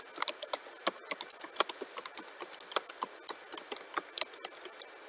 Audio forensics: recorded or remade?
recorded